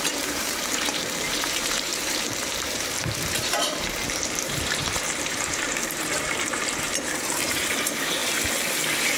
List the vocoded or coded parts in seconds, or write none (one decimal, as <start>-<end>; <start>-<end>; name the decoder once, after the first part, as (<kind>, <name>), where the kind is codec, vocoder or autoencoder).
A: 0.0-8.2 (vocoder, BigVGAN v2)